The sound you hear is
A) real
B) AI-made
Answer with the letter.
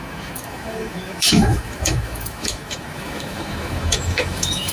B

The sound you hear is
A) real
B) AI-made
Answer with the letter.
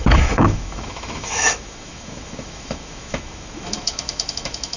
B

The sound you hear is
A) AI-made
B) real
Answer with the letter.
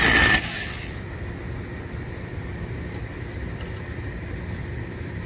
B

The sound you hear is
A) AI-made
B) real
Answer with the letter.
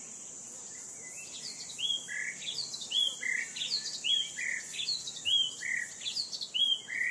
B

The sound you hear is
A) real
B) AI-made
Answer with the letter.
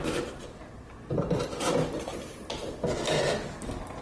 A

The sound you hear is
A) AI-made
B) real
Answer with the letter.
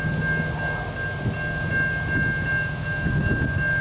B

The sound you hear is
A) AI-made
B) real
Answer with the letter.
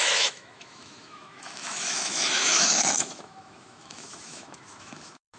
A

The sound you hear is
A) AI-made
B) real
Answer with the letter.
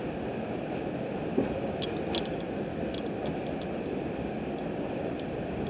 B